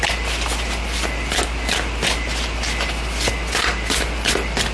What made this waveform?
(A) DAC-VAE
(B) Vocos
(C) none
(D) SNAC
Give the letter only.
C